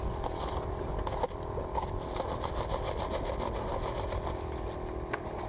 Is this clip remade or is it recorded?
recorded